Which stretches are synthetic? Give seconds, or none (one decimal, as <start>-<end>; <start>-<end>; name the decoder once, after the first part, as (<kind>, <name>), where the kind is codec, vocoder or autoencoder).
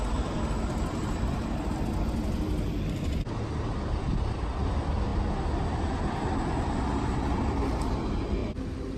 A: none